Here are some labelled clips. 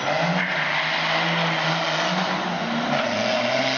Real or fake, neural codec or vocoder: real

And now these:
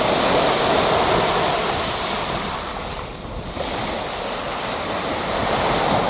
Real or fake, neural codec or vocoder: real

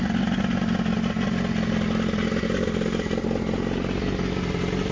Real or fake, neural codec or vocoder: real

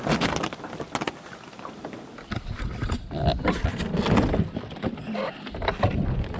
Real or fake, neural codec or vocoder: real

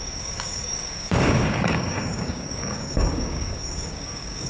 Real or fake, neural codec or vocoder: fake, codec, DAC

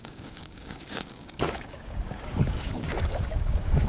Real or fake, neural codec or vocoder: fake, codec, DAC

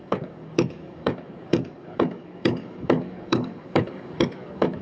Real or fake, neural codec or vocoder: fake, codec, DAC